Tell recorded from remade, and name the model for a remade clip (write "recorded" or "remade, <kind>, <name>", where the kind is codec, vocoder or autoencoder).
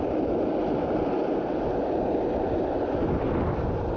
recorded